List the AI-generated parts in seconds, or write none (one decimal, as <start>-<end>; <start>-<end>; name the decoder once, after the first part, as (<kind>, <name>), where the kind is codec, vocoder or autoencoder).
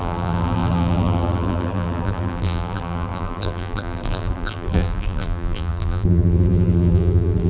0.0-7.5 (vocoder, BigVGAN v2)